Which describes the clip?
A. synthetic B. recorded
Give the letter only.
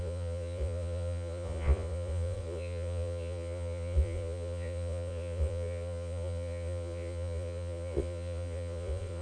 A